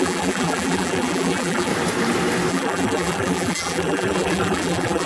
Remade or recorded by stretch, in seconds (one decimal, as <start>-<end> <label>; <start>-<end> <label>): 0.0-1.7 remade; 1.7-2.5 recorded; 2.5-5.1 remade